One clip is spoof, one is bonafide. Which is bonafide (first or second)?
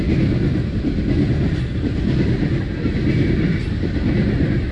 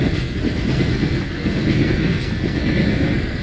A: first